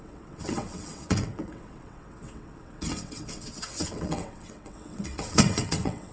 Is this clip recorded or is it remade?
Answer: remade